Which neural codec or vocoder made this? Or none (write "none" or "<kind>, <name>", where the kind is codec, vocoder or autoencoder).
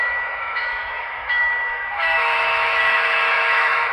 autoencoder, DAC-VAE